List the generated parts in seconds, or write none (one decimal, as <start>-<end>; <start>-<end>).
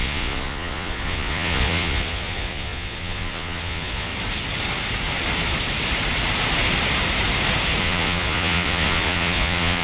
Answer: 0.0-4.1; 7.8-9.8